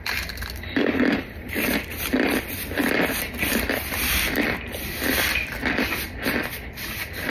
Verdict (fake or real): fake